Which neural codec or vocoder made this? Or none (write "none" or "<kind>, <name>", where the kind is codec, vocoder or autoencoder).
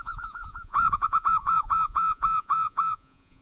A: vocoder, Vocos